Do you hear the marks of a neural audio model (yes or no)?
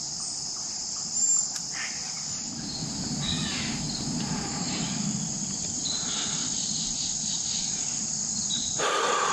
no